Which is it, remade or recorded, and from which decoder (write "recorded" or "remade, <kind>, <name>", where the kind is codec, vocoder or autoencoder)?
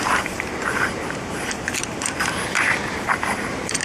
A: remade, vocoder, BigVGAN v2